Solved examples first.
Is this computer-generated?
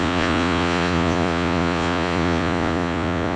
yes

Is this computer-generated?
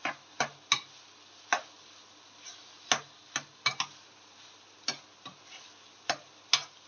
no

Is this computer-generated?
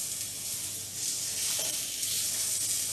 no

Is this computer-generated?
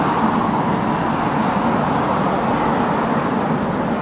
no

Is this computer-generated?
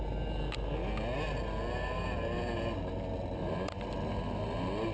no